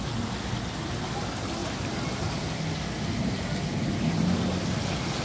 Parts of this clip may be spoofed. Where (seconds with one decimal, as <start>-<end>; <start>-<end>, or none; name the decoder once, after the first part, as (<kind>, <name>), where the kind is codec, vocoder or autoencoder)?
none